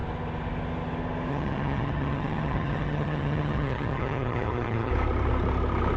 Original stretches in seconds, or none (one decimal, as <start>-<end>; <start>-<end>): 0.0-1.3; 4.9-6.0